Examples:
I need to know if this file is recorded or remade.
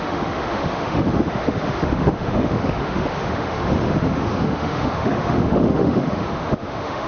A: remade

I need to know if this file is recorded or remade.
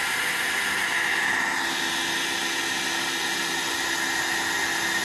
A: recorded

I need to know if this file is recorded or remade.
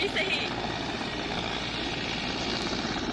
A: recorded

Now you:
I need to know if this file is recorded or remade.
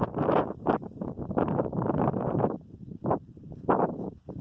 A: remade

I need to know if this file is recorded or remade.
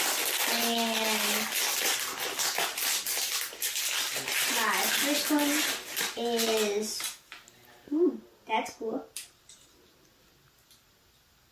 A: recorded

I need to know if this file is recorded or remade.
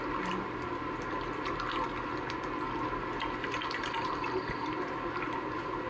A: recorded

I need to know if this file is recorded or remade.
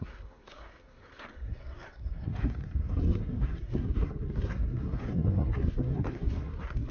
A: remade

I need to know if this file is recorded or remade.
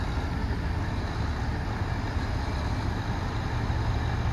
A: recorded